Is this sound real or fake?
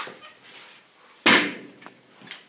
real